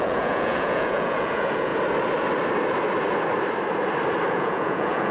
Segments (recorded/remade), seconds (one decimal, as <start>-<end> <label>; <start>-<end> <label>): 0.0-1.7 remade; 1.7-4.3 recorded; 4.3-5.1 remade